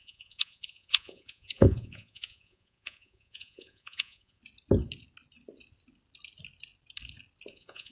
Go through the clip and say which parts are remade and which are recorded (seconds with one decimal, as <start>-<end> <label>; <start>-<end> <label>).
0.0-4.4 remade; 4.4-7.5 recorded; 7.5-7.9 remade